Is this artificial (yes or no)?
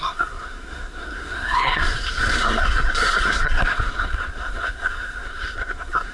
yes